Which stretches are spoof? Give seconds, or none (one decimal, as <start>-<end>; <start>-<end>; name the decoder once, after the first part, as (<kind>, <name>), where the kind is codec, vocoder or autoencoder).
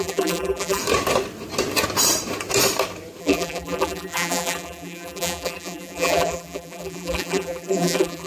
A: 0.0-0.8 (vocoder, BigVGAN v2); 3.2-8.3